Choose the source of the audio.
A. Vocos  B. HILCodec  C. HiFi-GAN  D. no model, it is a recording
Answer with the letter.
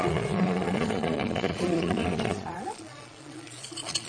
A